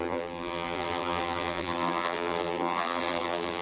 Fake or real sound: fake